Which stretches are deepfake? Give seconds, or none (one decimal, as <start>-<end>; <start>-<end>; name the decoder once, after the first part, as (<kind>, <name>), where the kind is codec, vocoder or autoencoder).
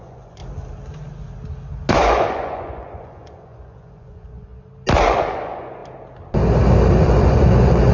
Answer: 0.0-0.4 (vocoder, Vocos); 1.9-4.5; 5.1-5.8; 7.0-7.9